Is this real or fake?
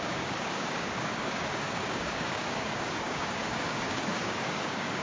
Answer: fake